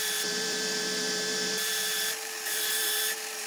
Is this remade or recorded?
remade